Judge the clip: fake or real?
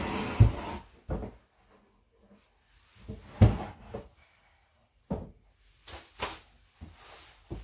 real